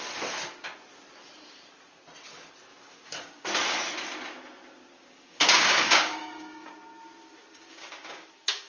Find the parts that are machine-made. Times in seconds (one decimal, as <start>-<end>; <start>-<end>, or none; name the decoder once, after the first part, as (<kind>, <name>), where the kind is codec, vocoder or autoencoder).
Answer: 2.7-3.4 (codec, DAC); 5.0-6.7; 7.4-8.7